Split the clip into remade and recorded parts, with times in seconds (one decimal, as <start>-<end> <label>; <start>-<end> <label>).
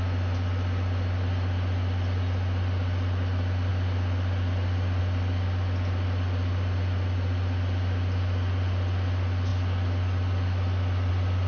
0.0-11.5 recorded